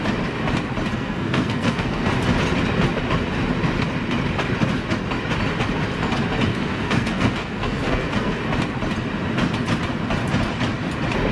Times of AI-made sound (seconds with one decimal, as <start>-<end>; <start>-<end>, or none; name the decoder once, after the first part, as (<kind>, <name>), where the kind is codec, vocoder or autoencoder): 0.9-2.1 (codec, SNAC); 6.5-8.4